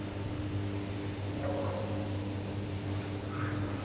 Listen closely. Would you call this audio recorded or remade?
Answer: recorded